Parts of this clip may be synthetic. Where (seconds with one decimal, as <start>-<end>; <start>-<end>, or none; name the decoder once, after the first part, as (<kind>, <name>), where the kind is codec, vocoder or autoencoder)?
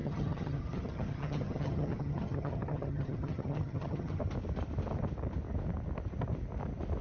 0.0-4.2 (vocoder, HiFi-GAN)